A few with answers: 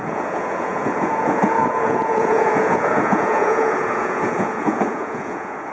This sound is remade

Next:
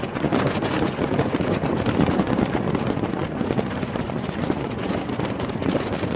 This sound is remade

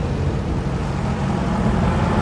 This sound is recorded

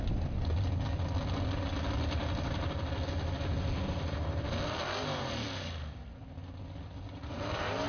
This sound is recorded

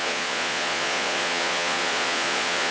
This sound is remade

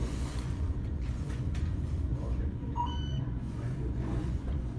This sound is remade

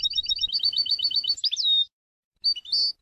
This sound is recorded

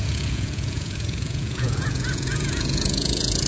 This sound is remade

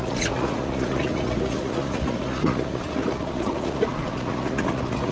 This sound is remade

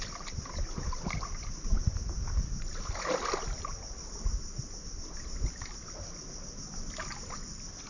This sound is recorded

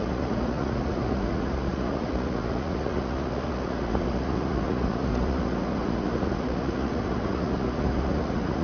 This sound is remade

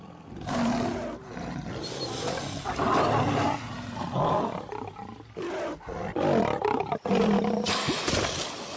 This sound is recorded